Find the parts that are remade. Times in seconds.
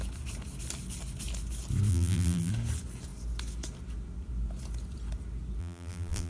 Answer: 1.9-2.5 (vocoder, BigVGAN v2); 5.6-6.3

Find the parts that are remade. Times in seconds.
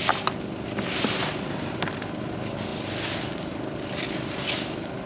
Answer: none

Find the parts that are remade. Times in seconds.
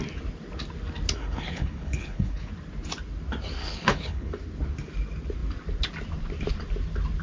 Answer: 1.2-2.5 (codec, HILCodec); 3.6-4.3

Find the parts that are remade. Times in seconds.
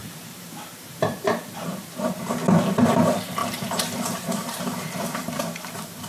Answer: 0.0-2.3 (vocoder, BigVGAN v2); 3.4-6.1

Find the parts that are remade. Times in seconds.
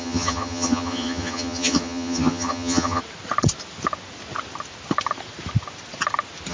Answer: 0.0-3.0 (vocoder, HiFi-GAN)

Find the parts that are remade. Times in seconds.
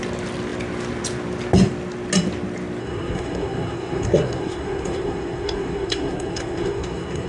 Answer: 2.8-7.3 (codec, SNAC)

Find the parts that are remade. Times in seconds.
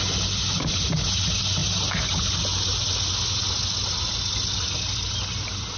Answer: none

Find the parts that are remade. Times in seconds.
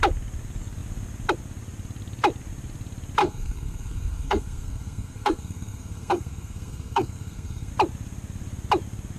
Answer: 3.2-7.7 (codec, SNAC)